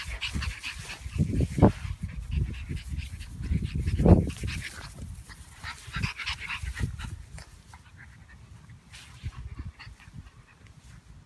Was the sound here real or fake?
real